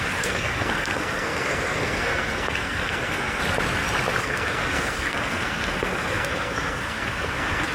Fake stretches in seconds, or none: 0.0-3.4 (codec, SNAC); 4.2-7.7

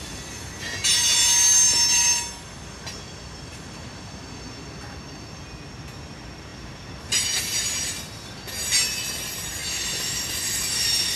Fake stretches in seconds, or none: none

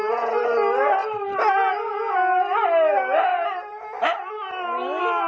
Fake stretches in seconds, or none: 1.0-1.7 (vocoder, BigVGAN v2); 3.3-4.6

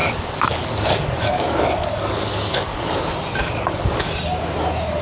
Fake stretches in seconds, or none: 0.0-3.0 (codec, DAC); 3.4-4.1

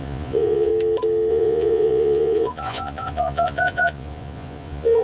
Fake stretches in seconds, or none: 0.0-0.7 (vocoder, Vocos); 1.3-5.0

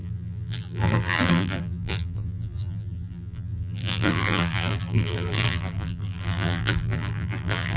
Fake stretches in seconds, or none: 0.0-7.8 (vocoder, BigVGAN v2)

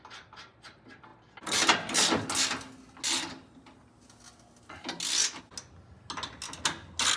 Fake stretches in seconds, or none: none